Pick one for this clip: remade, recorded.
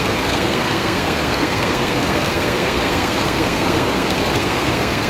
remade